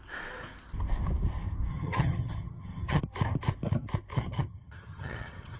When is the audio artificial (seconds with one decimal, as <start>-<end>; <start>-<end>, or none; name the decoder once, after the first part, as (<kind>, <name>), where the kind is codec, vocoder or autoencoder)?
1.7-3.0 (vocoder, HiFi-GAN); 4.1-5.6